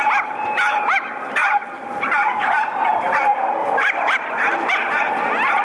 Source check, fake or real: fake